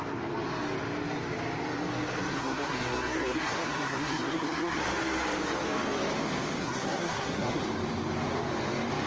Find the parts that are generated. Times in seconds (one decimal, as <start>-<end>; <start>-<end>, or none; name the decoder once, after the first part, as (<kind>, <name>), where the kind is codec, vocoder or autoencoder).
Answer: 2.3-4.8 (codec, SNAC); 6.6-7.6